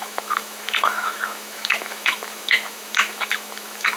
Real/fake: fake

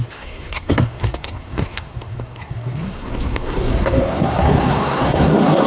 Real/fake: fake